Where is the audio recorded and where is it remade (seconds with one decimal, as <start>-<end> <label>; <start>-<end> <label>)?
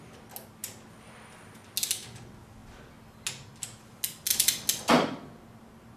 0.0-6.0 recorded